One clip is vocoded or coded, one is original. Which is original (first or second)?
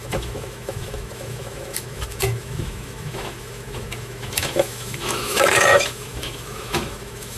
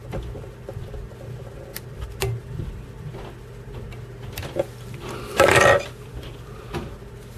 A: second